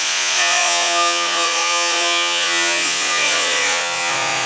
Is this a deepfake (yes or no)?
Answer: yes